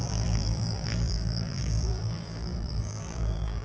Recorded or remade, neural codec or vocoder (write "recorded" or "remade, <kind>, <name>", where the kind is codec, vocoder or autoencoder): remade, vocoder, BigVGAN v2